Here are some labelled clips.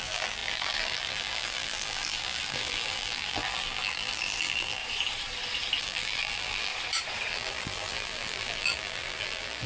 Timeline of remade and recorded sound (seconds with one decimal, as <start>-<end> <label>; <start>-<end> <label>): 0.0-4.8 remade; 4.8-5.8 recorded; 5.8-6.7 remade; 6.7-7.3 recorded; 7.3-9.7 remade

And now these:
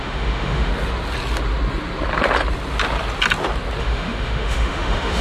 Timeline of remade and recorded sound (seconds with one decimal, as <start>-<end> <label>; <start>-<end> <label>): 0.0-0.7 remade; 0.7-3.8 recorded; 3.8-5.2 remade

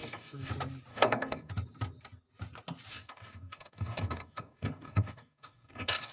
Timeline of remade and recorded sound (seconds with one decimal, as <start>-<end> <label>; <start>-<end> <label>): 0.0-0.5 remade; 0.5-0.9 recorded; 0.9-1.5 remade; 1.5-2.9 recorded; 2.9-6.1 remade

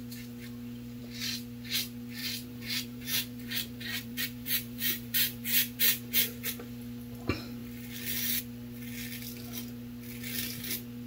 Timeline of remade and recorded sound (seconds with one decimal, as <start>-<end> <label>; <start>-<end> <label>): 0.0-2.2 recorded; 2.2-5.8 remade; 5.8-11.1 recorded

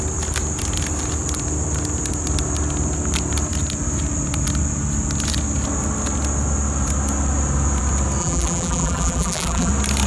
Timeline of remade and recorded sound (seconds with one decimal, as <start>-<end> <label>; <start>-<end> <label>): 0.0-8.2 recorded; 8.2-9.7 remade; 9.7-10.1 recorded

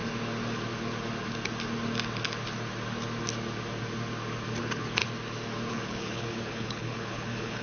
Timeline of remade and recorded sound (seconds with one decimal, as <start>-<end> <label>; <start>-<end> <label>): 0.0-4.6 recorded; 4.6-5.0 remade; 5.0-5.7 recorded; 5.7-7.6 remade